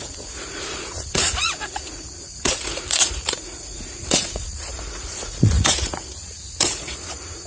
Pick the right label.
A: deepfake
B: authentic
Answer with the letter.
A